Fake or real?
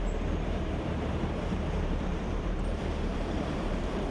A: fake